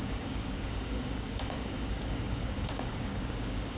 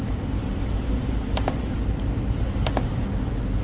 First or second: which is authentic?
second